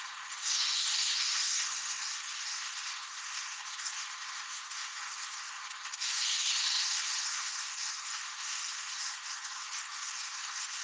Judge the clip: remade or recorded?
remade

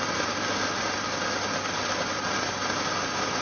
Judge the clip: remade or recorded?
recorded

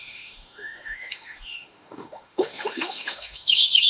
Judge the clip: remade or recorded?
remade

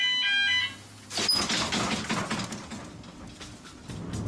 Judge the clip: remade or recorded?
recorded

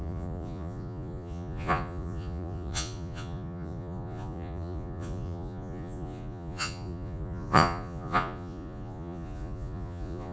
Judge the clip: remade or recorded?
remade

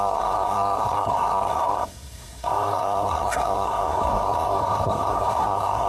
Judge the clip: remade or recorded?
remade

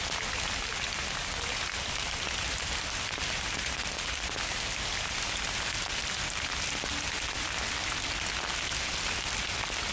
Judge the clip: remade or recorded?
recorded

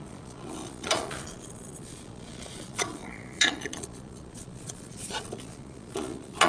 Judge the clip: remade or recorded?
remade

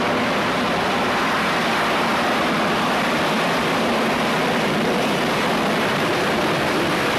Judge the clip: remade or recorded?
remade